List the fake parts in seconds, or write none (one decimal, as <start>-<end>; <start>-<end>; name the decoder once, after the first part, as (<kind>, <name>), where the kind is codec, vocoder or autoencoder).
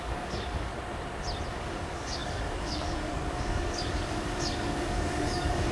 0.0-0.7 (codec, DAC); 1.5-5.7